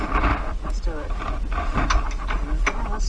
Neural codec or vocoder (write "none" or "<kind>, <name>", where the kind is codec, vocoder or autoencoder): none